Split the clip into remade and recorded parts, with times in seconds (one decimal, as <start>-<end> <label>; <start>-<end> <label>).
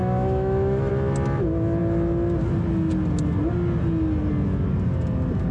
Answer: 0.0-0.9 remade; 0.9-5.5 recorded